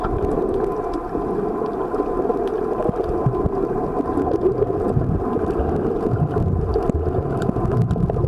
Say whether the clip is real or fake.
real